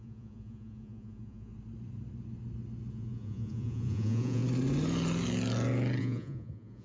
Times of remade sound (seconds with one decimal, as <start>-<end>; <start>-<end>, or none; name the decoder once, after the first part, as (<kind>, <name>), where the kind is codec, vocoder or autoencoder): 0.0-1.5 (vocoder, Vocos); 2.9-4.4; 6.0-6.8